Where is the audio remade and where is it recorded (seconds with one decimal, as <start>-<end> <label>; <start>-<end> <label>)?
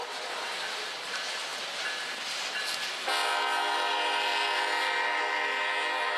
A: 0.0-6.2 recorded